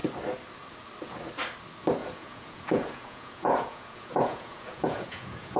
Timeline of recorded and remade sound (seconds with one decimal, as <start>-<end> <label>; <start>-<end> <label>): 0.0-2.0 recorded; 2.0-5.6 remade